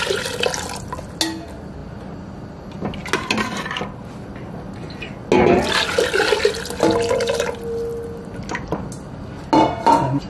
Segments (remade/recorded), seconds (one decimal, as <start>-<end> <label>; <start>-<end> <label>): 0.0-10.3 recorded